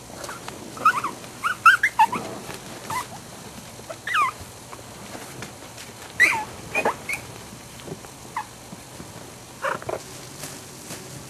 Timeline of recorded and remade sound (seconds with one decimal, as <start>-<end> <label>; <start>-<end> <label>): 0.0-3.3 recorded; 3.3-3.9 remade; 3.9-4.7 recorded; 4.7-9.2 remade; 9.2-11.3 recorded